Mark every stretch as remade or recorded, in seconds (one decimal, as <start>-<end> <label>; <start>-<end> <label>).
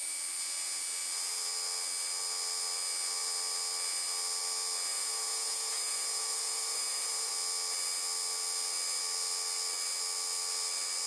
0.0-4.9 recorded; 4.9-7.3 remade; 7.3-11.1 recorded